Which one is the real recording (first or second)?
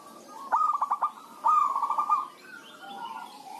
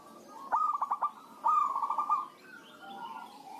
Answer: second